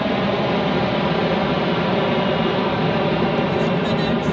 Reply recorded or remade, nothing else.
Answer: recorded